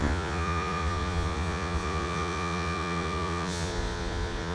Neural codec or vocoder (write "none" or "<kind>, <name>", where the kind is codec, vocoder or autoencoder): vocoder, Vocos